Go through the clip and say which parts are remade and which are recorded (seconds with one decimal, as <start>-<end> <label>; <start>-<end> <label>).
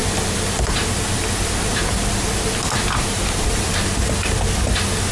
0.0-3.0 recorded; 3.0-3.9 remade; 3.9-5.1 recorded